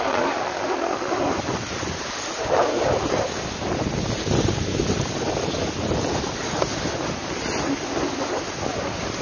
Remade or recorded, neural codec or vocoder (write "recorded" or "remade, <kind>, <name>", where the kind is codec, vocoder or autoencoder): recorded